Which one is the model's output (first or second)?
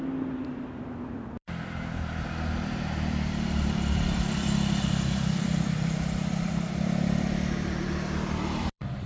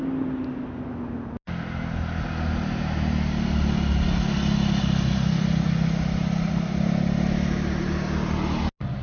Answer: first